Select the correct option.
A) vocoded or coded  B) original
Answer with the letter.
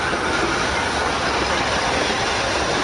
B